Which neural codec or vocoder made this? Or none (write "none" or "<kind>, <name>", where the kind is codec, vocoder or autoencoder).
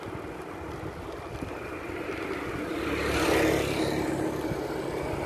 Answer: none